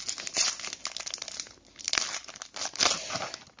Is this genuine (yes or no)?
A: yes